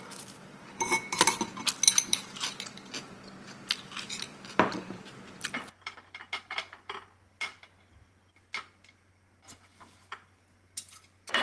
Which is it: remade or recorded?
recorded